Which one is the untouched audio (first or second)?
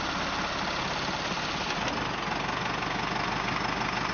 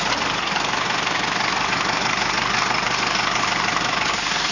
first